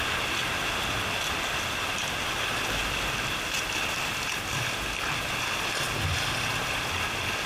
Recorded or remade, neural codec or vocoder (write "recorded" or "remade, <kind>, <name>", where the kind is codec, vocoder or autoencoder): recorded